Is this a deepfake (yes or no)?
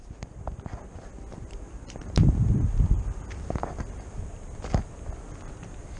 yes